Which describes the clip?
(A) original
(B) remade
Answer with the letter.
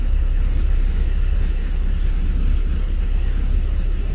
B